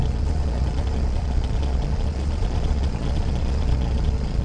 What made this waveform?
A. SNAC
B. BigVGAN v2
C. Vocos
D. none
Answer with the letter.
C